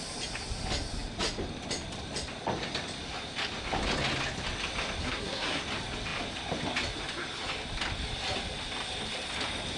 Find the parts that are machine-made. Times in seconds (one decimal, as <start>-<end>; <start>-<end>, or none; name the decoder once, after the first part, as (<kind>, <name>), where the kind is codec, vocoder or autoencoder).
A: 5.0-5.6 (codec, SNAC)